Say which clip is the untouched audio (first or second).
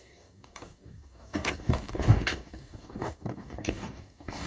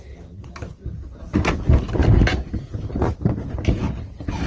second